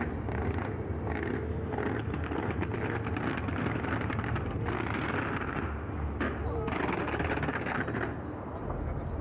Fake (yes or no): no